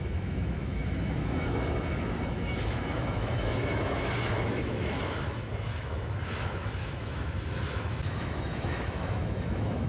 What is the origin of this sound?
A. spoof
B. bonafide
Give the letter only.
A